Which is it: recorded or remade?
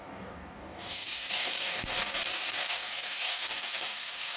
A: remade